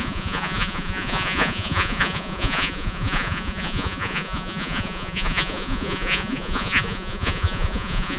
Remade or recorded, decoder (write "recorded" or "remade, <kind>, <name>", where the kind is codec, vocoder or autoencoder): remade, vocoder, Vocos